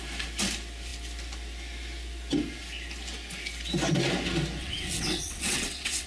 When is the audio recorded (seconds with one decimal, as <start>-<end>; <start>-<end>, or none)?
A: 0.0-4.6